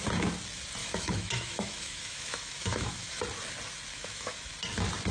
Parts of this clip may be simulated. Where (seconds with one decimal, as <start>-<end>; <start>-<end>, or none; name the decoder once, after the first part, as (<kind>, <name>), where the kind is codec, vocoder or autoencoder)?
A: 0.8-3.2 (autoencoder, DAC-VAE); 3.9-4.5